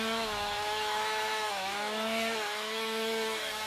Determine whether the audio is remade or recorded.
remade